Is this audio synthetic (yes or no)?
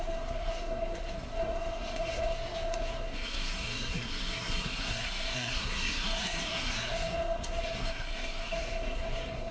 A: yes